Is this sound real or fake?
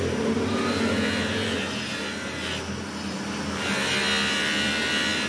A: real